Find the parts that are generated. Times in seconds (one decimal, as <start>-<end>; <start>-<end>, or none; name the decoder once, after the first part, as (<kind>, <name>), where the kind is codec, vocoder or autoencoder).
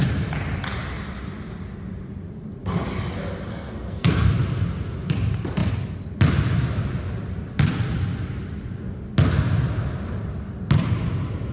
3.5-4.3 (codec, SNAC)